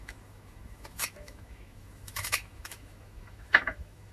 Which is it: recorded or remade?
remade